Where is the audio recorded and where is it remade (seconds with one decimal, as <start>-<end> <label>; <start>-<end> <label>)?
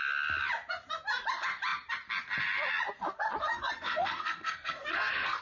0.0-3.4 recorded; 3.4-5.4 remade